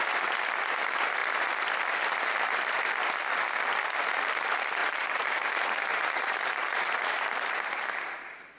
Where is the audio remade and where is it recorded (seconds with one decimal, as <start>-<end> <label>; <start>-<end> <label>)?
0.0-4.8 recorded; 4.8-5.5 remade; 5.5-5.9 recorded; 5.9-7.8 remade; 7.8-8.6 recorded